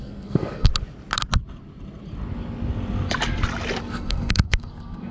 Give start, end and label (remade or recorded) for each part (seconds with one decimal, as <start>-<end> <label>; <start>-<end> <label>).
0.0-0.7 remade; 0.7-3.8 recorded; 3.8-5.1 remade